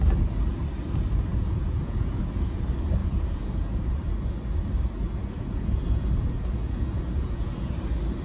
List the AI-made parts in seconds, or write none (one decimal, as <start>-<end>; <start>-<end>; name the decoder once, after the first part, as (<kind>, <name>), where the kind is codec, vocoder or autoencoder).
1.3-2.6 (vocoder, Vocos); 3.0-3.9; 5.2-7.7